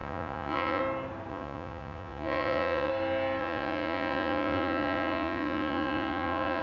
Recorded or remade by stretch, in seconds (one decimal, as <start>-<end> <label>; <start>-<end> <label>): 0.0-0.8 remade; 0.8-1.3 recorded; 1.3-2.9 remade; 2.9-3.4 recorded; 3.4-6.6 remade